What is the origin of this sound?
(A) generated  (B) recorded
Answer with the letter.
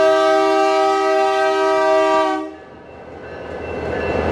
B